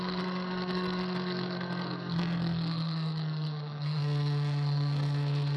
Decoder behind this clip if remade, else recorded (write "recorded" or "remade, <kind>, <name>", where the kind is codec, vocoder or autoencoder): remade, codec, SNAC